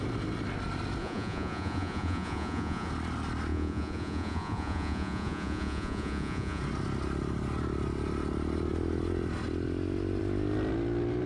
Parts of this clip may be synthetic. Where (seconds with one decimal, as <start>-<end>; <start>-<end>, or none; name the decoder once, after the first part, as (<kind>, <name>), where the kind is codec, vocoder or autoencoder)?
1.0-2.9 (vocoder, Vocos); 3.5-6.6